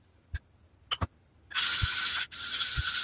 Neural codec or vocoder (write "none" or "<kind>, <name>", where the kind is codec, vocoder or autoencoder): none